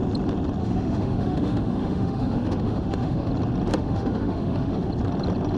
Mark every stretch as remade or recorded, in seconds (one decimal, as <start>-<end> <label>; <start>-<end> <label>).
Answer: 0.0-0.6 recorded; 0.6-3.3 remade; 3.3-3.7 recorded; 3.7-4.9 remade; 4.9-5.6 recorded